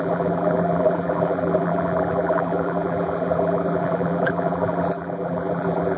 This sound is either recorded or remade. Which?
remade